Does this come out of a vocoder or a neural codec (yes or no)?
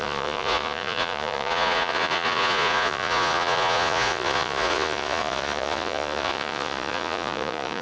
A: yes